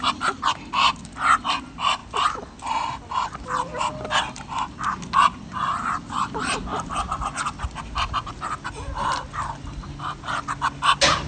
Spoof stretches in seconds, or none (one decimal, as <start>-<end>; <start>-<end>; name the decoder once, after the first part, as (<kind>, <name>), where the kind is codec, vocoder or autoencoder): none